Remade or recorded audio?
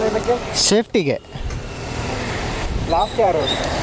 remade